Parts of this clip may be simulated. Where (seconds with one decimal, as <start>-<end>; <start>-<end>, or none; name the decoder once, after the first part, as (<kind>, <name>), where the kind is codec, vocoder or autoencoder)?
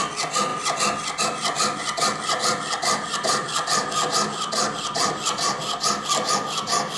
none